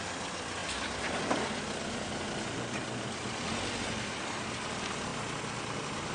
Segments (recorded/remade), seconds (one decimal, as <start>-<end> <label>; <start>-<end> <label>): 0.0-6.1 recorded